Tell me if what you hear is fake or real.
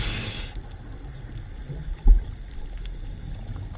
real